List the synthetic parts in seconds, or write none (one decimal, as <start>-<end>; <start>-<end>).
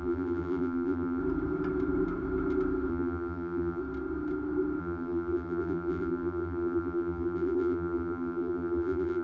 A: 0.0-1.2; 2.9-3.8; 4.8-9.2